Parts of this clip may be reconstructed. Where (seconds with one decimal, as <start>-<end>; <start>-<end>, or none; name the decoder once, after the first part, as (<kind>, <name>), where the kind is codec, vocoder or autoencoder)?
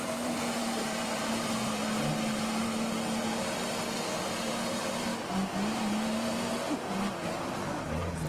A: 0.0-1.8 (vocoder, BigVGAN v2); 4.5-5.1; 7.8-8.3